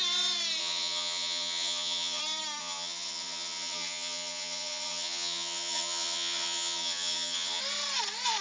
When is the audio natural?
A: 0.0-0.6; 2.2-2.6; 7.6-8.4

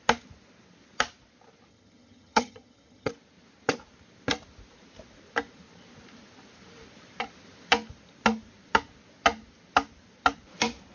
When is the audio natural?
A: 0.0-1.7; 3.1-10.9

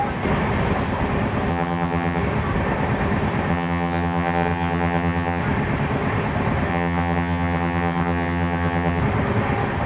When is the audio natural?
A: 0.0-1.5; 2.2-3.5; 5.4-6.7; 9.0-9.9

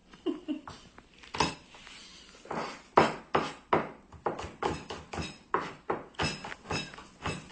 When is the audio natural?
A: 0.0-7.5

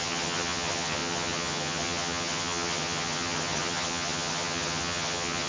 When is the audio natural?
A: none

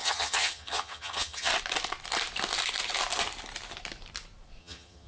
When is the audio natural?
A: 1.5-4.6